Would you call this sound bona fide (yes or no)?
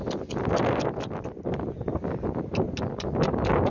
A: yes